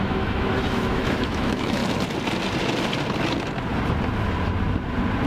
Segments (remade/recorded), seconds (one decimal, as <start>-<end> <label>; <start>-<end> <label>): 0.0-1.8 remade; 1.8-5.3 recorded